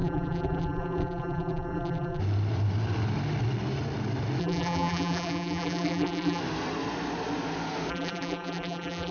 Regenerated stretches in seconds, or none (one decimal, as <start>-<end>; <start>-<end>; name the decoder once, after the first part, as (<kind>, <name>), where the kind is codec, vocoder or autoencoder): 0.0-2.2 (vocoder, BigVGAN v2); 4.4-6.4; 7.9-9.1